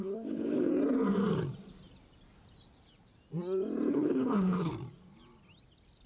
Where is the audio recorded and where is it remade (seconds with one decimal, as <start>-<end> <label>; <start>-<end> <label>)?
0.0-0.7 remade; 0.7-3.9 recorded; 3.9-4.7 remade; 4.7-6.1 recorded